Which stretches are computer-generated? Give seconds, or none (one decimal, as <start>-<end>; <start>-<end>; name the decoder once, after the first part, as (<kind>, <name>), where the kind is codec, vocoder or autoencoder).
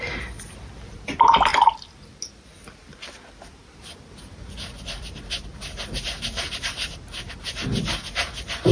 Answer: 1.5-2.0 (vocoder, BigVGAN v2)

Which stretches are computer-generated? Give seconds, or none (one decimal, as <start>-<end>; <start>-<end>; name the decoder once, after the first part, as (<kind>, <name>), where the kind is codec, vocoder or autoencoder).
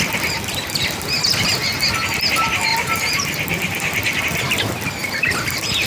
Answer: 0.5-1.3 (vocoder, BigVGAN v2); 2.7-4.2; 5.0-5.9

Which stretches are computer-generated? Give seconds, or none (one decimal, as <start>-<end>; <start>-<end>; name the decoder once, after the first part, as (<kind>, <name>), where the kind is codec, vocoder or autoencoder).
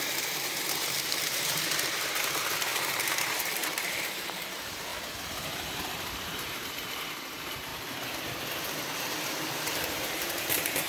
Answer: 0.0-7.7 (vocoder, BigVGAN v2); 9.0-10.9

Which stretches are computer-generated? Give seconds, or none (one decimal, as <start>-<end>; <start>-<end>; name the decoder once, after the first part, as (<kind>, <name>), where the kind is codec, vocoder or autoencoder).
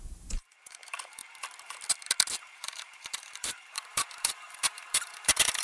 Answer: 0.0-1.2 (vocoder, BigVGAN v2); 2.4-5.6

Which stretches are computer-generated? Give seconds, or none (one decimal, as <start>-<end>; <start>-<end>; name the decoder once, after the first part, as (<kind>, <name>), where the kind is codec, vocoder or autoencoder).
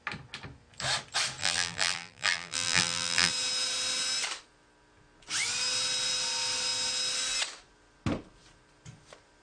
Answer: 1.4-3.3 (vocoder, BigVGAN v2)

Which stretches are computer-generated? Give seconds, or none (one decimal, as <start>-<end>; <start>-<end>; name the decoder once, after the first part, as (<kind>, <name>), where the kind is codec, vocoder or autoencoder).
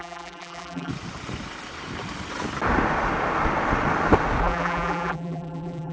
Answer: 0.0-0.9 (vocoder, BigVGAN v2); 4.4-5.9